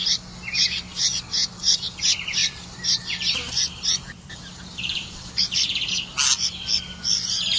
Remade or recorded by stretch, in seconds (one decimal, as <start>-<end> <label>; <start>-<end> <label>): 0.0-2.4 recorded; 2.4-5.9 remade; 5.9-7.6 recorded